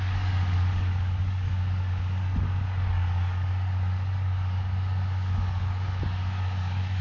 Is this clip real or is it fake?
fake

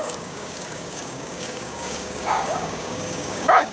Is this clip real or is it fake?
fake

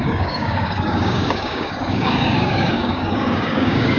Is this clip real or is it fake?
fake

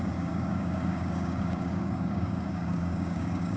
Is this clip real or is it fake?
fake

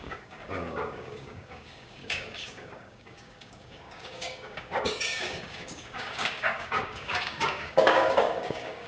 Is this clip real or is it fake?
fake